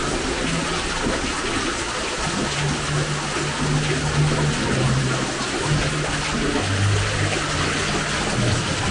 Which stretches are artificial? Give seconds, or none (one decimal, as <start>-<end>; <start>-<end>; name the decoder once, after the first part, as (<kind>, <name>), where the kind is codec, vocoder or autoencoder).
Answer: none